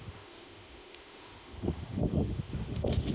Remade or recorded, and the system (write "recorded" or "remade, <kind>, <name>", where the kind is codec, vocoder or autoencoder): remade, autoencoder, DAC-VAE